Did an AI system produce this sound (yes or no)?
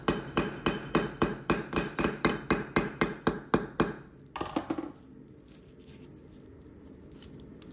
no